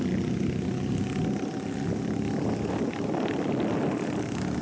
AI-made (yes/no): no